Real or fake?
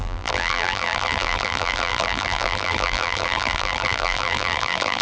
fake